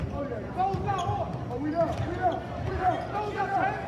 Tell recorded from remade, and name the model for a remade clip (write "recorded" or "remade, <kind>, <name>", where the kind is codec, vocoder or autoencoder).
remade, vocoder, BigVGAN v2